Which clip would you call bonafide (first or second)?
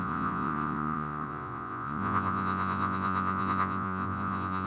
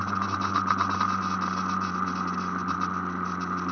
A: second